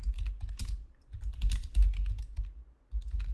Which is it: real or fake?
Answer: real